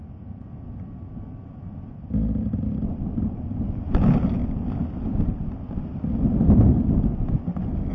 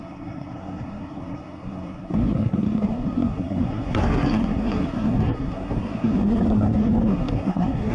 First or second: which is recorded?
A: first